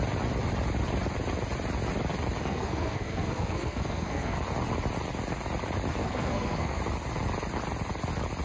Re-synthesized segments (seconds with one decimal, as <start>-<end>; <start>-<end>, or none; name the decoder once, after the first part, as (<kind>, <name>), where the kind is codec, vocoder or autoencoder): 2.4-4.4 (codec, SNAC); 6.0-6.8